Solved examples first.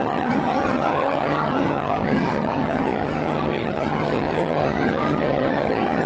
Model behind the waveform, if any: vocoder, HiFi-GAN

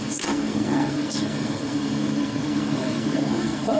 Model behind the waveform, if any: codec, SNAC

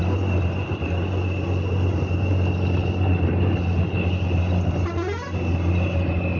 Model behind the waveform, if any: none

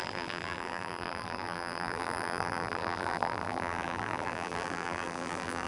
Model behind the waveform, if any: vocoder, BigVGAN v2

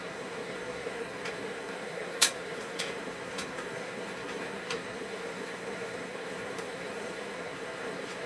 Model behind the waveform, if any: codec, SNAC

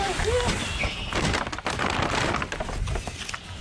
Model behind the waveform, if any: none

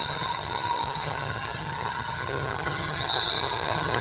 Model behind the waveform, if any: vocoder, HiFi-GAN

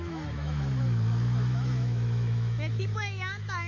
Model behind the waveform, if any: autoencoder, DAC-VAE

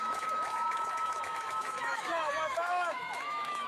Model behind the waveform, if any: autoencoder, DAC-VAE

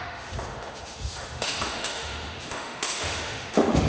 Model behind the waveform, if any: autoencoder, DAC-VAE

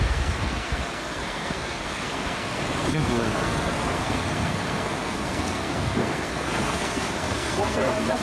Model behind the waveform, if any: codec, SNAC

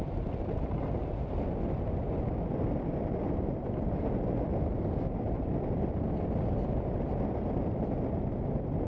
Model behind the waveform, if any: none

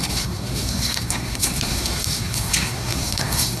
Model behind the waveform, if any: codec, SNAC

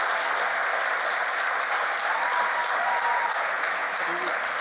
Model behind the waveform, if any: none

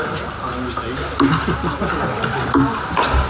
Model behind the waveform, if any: none